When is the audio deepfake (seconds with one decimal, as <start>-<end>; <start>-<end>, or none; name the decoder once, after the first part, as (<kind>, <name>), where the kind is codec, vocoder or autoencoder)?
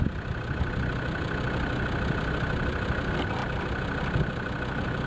none